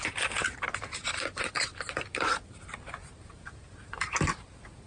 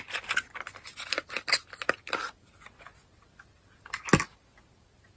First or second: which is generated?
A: first